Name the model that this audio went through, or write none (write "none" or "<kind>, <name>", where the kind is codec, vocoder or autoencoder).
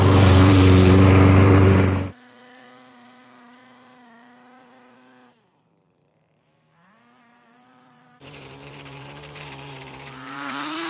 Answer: vocoder, BigVGAN v2